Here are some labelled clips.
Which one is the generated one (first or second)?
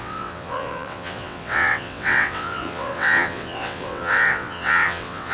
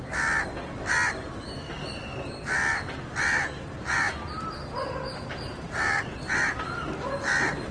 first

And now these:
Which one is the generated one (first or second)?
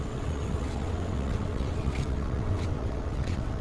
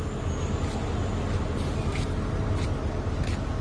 first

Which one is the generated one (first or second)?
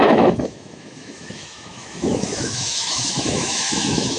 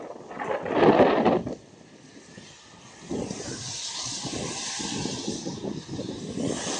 first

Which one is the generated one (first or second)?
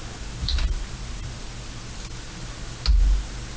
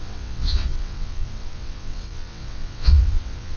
second